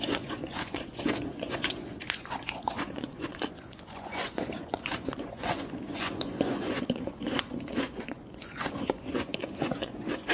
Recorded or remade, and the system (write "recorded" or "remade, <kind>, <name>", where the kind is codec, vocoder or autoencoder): remade, vocoder, Vocos